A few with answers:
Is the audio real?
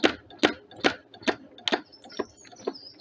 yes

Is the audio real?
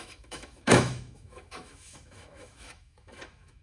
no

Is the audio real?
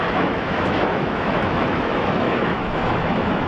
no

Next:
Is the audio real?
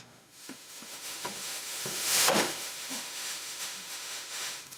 no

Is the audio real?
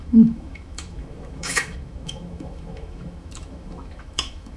no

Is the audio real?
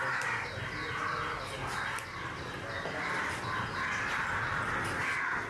yes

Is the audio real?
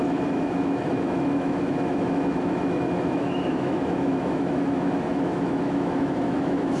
no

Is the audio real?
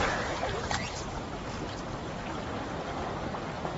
yes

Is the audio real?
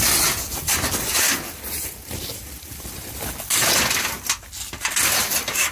yes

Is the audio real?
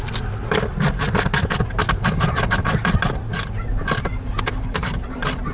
yes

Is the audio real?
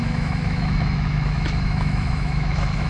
no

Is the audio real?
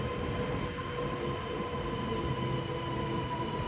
yes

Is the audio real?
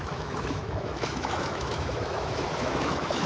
no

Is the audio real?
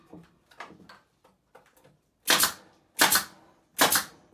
yes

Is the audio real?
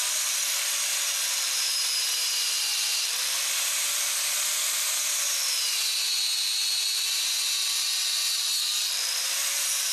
yes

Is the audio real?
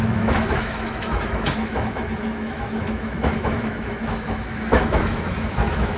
no